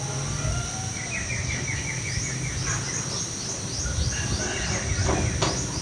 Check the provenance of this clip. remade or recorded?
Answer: recorded